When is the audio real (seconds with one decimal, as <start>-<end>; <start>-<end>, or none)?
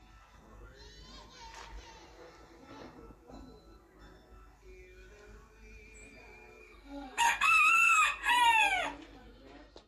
0.0-6.6; 8.3-9.9